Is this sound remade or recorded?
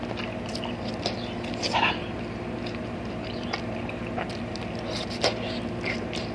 recorded